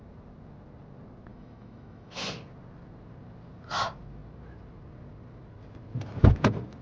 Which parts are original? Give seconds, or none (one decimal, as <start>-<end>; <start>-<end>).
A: 0.0-1.3; 2.1-6.8